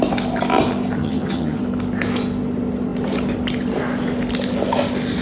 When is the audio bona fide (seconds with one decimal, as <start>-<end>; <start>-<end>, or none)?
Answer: 0.0-1.0; 1.6-5.2